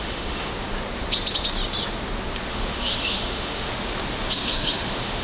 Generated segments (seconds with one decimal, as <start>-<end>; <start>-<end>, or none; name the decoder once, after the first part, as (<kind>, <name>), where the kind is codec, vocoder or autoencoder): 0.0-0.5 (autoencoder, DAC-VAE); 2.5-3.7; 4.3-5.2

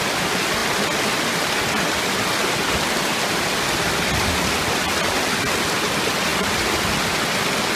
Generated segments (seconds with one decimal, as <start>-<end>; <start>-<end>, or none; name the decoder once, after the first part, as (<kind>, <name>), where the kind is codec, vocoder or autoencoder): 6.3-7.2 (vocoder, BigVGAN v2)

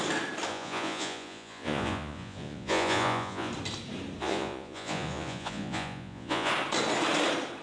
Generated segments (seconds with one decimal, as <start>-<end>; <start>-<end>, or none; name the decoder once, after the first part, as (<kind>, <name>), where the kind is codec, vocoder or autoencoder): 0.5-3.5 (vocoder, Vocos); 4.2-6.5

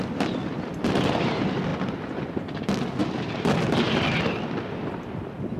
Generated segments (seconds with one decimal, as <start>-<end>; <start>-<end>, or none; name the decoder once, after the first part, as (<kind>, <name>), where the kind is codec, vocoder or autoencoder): none

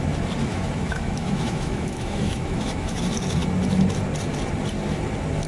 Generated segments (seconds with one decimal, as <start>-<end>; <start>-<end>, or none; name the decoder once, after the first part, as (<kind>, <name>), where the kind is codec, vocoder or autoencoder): 0.5-3.0 (autoencoder, DAC-VAE)

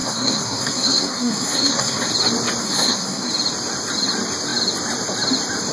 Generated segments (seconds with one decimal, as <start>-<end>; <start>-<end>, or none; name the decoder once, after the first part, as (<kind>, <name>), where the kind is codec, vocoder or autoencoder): 0.0-2.1 (codec, SNAC); 2.6-3.3

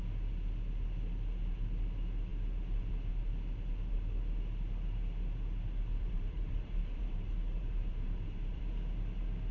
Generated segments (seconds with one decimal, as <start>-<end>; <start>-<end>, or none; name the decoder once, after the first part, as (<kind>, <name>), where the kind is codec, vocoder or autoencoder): 5.9-8.6 (vocoder, BigVGAN v2)

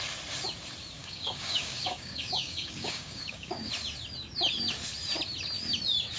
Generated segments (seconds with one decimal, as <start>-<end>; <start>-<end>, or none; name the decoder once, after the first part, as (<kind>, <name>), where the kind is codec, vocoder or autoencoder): 1.0-3.7 (codec, DAC)